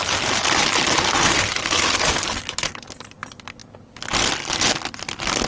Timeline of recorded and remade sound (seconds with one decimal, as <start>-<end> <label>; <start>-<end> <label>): 0.0-5.5 recorded

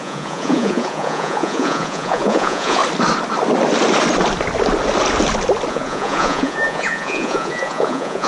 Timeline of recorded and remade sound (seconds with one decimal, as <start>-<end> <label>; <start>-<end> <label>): 0.0-2.8 remade; 2.8-5.7 recorded; 5.7-8.3 remade

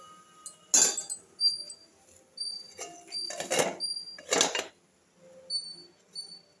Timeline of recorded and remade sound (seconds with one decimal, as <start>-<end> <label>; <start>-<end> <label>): 0.0-6.6 recorded

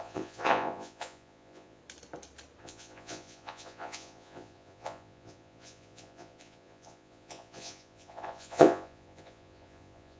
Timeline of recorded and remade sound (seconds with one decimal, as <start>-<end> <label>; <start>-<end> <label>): 0.0-1.8 remade; 1.8-2.6 recorded; 2.6-10.2 remade

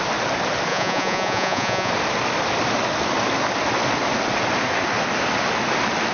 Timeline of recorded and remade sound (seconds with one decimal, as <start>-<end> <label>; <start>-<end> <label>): 0.0-0.7 recorded; 0.7-1.9 remade; 1.9-6.1 recorded

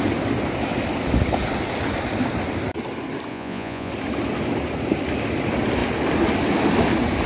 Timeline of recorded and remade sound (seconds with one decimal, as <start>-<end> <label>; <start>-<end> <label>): 0.0-3.3 recorded; 3.3-3.9 remade; 3.9-7.3 recorded